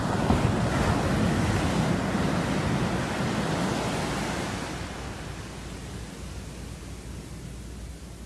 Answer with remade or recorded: recorded